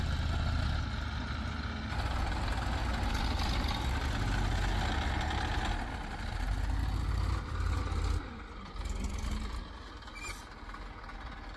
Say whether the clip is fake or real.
real